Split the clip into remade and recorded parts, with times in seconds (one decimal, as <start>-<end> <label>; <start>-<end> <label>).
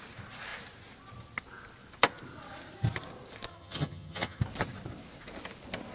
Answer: 0.0-3.5 recorded; 3.5-4.4 remade; 4.4-5.9 recorded